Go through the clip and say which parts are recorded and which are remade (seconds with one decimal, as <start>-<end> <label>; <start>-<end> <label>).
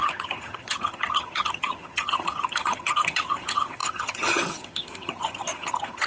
0.0-6.1 remade